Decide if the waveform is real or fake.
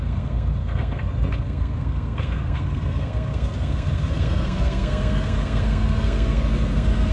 fake